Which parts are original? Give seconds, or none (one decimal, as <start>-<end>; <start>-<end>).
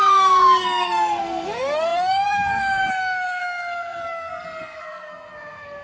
none